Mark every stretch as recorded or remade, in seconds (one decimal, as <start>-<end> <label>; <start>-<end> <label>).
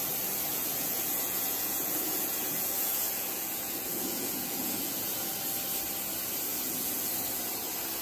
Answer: 0.0-0.5 recorded; 0.5-5.3 remade; 5.3-6.5 recorded; 6.5-7.1 remade; 7.1-8.0 recorded